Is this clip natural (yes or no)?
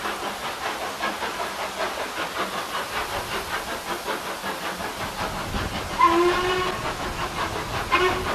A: yes